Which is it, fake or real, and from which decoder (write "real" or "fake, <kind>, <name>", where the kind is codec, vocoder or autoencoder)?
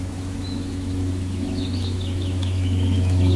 fake, autoencoder, DAC-VAE